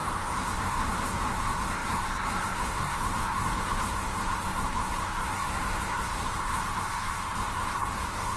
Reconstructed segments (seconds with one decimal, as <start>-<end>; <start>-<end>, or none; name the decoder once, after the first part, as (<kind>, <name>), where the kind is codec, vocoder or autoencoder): 0.0-8.4 (codec, SNAC)